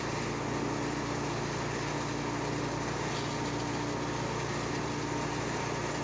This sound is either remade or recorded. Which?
recorded